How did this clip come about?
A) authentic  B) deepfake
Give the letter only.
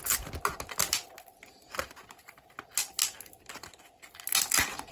A